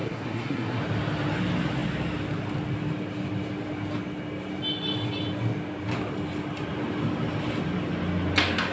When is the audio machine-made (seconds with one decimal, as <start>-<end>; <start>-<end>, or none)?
0.0-0.8